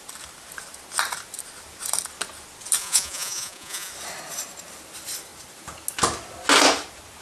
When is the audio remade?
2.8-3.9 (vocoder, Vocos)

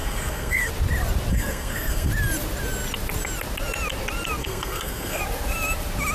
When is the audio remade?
0.0-0.7 (codec, SNAC); 1.3-2.1; 4.4-5.2

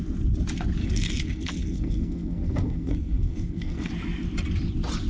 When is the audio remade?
0.8-3.9 (codec, SNAC)

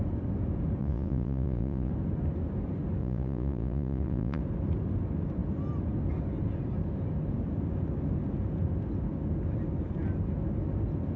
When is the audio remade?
0.8-1.9 (vocoder, Vocos); 3.0-4.4

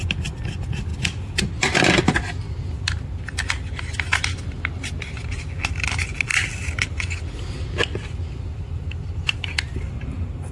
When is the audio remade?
none

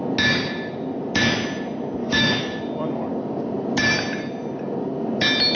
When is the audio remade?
2.0-2.6 (autoencoder, DAC-VAE)

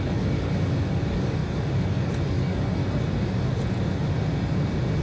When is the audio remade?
0.0-2.8 (codec, DAC)